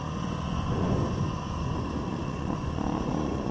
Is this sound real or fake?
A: fake